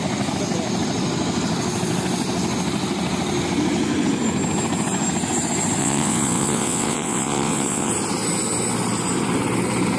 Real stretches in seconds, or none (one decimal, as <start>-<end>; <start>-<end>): 0.0-5.8; 7.9-10.0